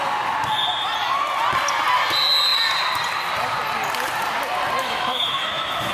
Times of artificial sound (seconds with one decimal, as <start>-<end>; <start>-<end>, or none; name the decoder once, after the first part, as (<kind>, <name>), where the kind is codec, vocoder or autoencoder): 4.8-5.9 (autoencoder, DAC-VAE)